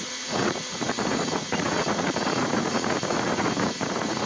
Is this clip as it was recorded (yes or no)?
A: no